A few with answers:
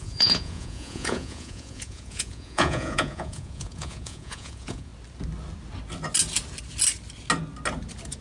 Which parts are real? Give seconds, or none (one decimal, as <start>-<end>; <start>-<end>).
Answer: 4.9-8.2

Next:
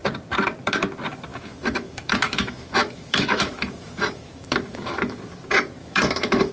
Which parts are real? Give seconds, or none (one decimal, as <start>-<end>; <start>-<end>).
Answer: 0.0-1.3; 5.2-5.8

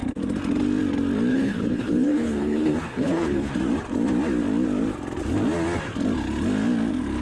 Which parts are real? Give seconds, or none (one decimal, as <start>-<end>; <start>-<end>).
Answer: 0.0-1.3; 3.5-7.2

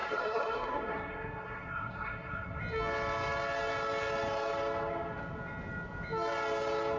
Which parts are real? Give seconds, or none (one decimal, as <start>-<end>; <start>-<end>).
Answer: 2.6-7.0